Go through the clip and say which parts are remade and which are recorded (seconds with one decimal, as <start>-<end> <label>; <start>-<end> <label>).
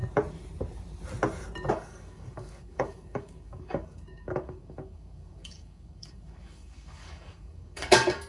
0.0-1.7 recorded; 1.7-8.3 remade